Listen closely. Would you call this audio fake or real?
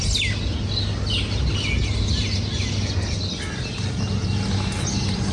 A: real